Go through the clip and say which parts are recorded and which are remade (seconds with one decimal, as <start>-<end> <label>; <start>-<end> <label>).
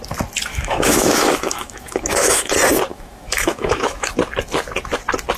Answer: 0.0-0.5 recorded; 0.5-2.5 remade; 2.5-2.9 recorded; 2.9-4.1 remade; 4.1-5.4 recorded